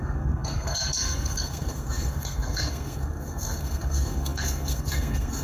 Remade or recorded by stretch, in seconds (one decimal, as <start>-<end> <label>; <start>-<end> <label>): 0.0-5.4 remade